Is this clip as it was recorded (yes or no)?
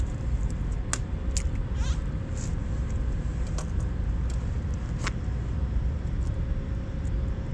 yes